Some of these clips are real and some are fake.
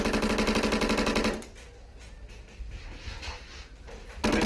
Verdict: real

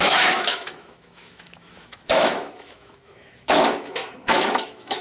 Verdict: fake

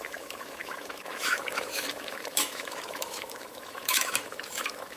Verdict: fake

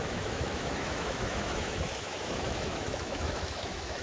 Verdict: fake